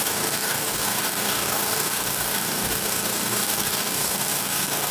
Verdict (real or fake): fake